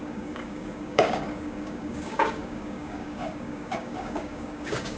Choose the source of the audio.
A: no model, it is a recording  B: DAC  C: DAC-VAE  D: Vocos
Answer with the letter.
B